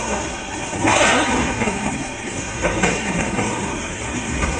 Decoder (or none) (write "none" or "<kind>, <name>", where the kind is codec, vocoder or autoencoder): codec, SNAC